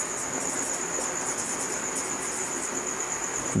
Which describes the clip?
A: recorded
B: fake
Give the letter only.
A